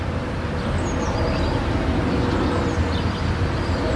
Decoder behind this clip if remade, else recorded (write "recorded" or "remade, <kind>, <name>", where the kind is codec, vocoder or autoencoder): recorded